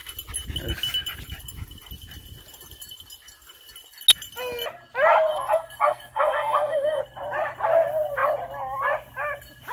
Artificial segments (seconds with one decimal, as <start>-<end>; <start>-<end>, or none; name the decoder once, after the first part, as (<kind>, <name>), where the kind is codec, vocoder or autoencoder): 5.3-7.0 (codec, SNAC)